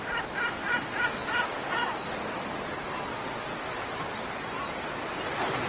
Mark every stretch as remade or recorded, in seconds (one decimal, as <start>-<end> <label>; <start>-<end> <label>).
0.0-5.7 recorded